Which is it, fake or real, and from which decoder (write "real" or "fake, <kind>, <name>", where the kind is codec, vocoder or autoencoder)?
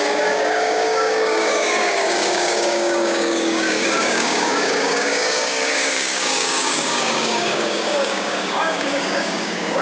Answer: fake, codec, DAC